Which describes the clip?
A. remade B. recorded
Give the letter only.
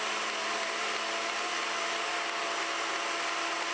B